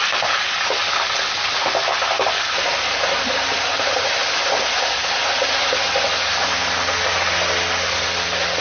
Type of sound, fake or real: real